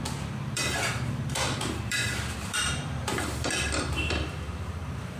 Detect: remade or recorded remade